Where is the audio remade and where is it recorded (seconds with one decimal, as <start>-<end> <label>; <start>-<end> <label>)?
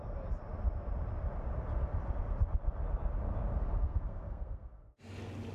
0.0-3.8 recorded; 3.8-5.0 remade; 5.0-5.5 recorded